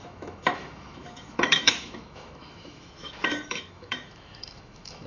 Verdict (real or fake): fake